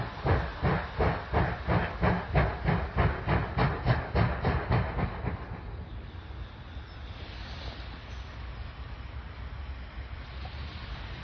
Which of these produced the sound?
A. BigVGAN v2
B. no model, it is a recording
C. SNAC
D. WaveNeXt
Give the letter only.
B